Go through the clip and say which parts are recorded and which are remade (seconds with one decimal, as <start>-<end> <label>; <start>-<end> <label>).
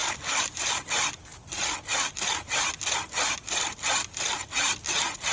0.0-0.9 remade; 0.9-5.3 recorded